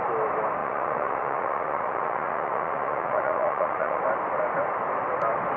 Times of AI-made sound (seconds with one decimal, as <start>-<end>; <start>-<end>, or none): 0.6-4.0